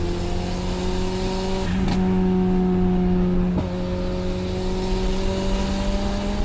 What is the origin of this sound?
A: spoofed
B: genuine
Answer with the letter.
B